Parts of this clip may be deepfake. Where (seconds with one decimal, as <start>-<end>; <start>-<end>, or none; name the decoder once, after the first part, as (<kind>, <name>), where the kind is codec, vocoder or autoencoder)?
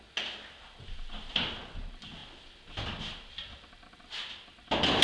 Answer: none